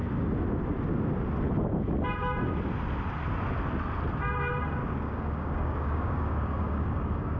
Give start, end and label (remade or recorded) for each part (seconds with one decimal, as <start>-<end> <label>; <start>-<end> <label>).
0.0-4.8 recorded; 4.8-7.4 remade